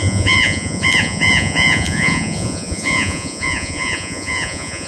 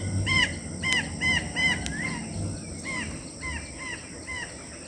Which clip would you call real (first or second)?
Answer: second